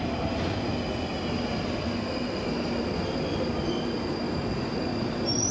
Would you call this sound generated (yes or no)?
no